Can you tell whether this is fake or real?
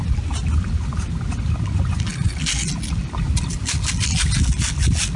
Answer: real